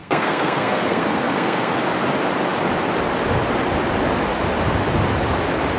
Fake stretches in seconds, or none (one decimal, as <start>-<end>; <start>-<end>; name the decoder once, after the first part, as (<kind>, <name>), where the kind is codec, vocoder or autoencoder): 0.0-1.7 (codec, SNAC)